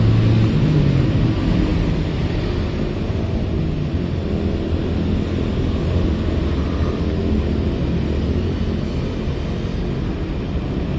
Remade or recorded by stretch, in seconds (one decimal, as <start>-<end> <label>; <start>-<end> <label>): 0.0-11.0 recorded

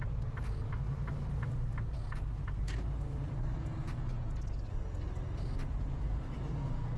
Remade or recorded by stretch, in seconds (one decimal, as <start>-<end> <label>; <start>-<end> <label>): 0.0-7.0 recorded

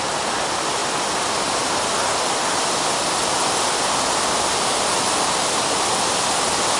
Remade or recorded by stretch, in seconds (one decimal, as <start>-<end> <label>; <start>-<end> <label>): 0.0-6.8 recorded

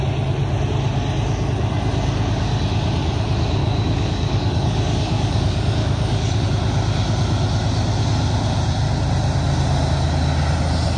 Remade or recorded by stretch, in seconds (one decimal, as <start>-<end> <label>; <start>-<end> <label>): 0.0-3.6 recorded; 3.6-6.4 remade; 6.4-11.0 recorded

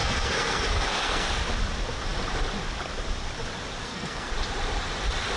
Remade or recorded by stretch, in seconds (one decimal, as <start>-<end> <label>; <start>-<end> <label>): 0.0-1.3 remade; 1.3-3.8 recorded; 3.8-4.3 remade; 4.3-5.4 recorded